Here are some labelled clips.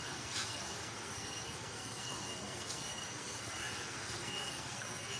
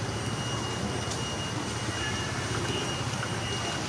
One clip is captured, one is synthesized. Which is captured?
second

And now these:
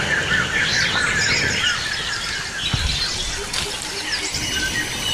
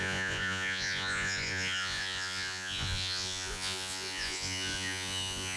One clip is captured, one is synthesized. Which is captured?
first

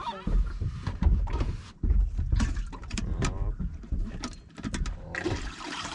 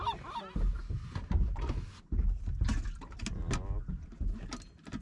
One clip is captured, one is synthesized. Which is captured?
second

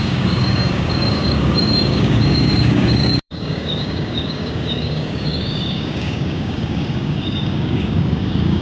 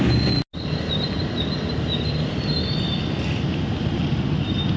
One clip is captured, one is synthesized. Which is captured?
second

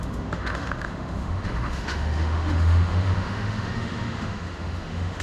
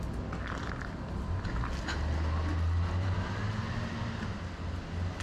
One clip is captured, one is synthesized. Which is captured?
second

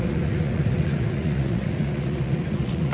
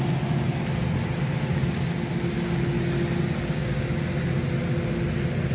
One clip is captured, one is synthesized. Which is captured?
second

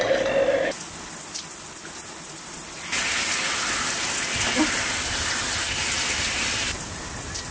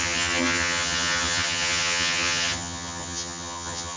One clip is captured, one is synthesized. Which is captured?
first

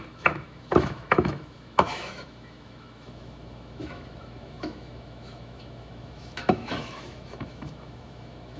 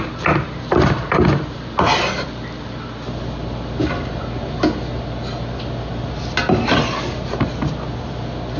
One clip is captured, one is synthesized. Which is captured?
second